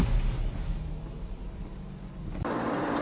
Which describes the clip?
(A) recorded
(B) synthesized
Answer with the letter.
A